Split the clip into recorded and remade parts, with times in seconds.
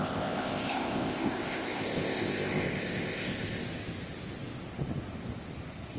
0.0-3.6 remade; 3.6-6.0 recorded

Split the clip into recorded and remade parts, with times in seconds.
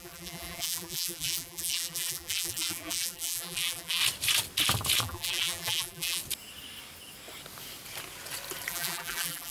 0.0-4.0 remade; 4.0-5.0 recorded; 5.0-6.2 remade; 6.2-8.7 recorded; 8.7-9.5 remade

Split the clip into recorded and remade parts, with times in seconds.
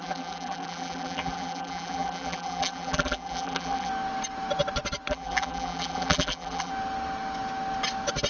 0.0-3.9 remade; 3.9-5.1 recorded; 5.1-6.7 remade; 6.7-8.3 recorded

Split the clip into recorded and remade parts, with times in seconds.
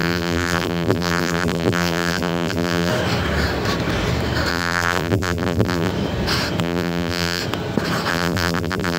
0.0-2.9 remade; 2.9-4.5 recorded; 4.5-5.9 remade; 5.9-6.6 recorded; 6.6-7.4 remade; 7.4-8.1 recorded; 8.1-9.0 remade